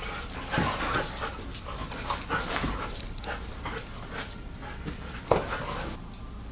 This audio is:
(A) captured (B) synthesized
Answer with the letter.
A